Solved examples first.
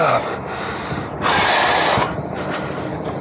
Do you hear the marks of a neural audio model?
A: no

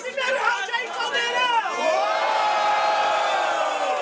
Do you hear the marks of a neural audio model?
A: no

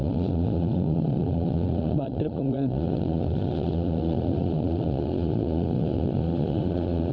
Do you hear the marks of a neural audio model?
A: yes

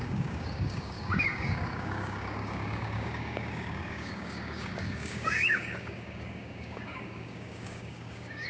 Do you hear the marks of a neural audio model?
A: yes